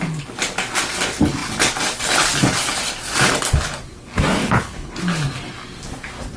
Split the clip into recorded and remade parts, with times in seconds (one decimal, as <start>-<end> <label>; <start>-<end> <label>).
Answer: 0.0-4.4 recorded; 4.4-5.0 remade; 5.0-6.4 recorded